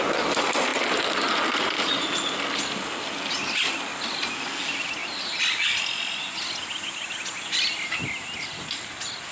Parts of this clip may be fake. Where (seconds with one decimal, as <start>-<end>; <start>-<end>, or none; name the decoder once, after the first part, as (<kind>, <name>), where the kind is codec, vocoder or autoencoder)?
none